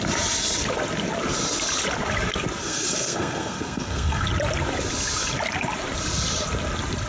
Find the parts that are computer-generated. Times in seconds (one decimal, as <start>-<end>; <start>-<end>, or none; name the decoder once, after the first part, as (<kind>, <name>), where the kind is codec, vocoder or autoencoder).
2.6-4.2 (codec, SNAC)